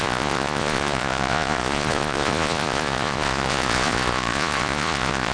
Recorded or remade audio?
remade